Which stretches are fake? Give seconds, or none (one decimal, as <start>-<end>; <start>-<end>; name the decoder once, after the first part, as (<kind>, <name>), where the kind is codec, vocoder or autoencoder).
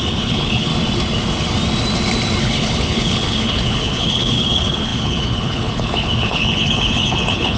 0.0-0.7 (codec, HILCodec); 2.4-7.6